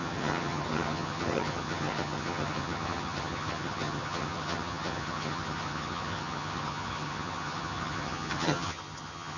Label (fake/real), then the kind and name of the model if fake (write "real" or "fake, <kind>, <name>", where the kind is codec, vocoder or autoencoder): fake, vocoder, HiFi-GAN